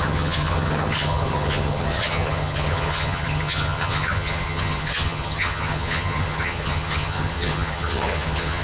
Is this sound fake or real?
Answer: fake